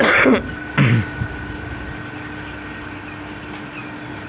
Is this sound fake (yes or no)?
no